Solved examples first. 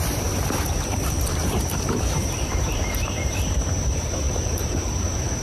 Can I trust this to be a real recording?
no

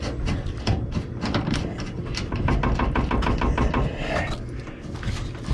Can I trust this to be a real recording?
yes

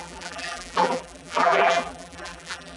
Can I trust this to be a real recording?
no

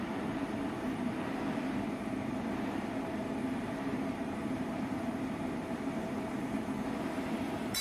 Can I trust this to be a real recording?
no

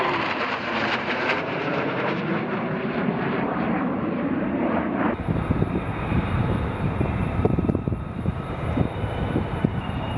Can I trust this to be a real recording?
no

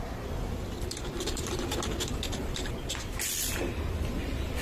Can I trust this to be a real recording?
no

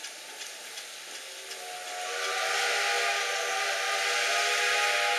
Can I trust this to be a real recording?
yes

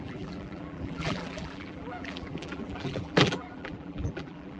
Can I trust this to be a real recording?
no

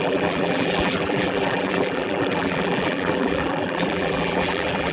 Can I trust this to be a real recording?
no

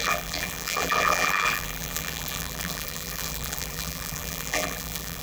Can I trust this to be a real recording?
no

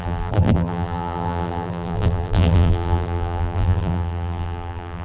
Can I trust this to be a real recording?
no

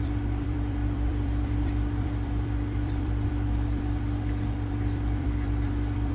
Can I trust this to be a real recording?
no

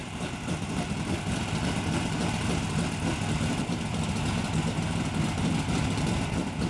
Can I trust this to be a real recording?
no